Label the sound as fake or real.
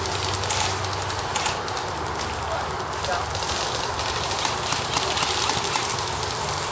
real